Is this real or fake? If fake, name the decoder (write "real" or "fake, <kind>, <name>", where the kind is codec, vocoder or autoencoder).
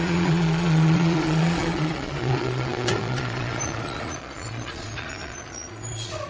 fake, vocoder, Vocos